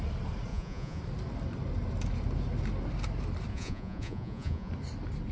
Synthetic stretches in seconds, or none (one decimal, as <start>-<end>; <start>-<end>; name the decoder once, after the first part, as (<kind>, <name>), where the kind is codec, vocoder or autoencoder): 0.5-1.0 (vocoder, Vocos); 3.5-4.7